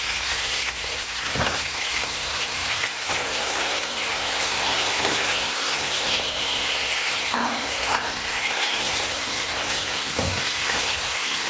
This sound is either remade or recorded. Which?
remade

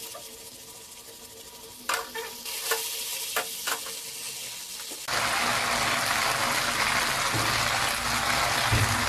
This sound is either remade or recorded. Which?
recorded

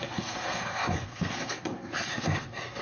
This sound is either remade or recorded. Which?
remade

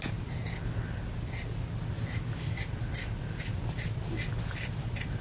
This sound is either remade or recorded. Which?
recorded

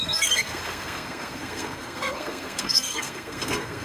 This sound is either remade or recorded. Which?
remade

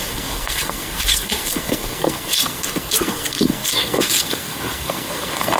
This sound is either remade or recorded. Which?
remade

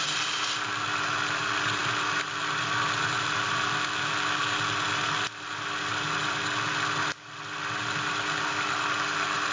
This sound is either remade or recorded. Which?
recorded